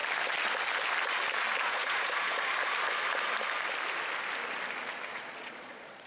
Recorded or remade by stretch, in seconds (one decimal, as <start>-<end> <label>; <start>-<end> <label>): 0.0-1.6 recorded; 1.6-2.5 remade; 2.5-5.1 recorded; 5.1-6.1 remade